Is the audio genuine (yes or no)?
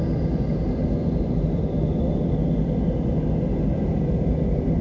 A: yes